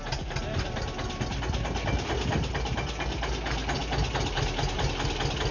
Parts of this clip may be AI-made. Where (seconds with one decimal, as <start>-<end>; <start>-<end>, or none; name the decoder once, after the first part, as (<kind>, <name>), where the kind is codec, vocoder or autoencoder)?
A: none